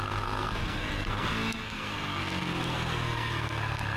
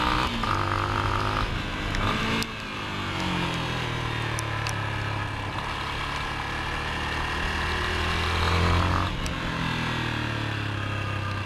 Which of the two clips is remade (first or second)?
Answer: first